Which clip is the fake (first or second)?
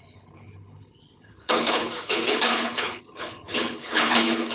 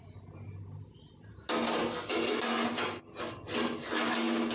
first